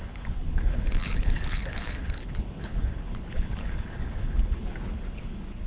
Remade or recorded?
remade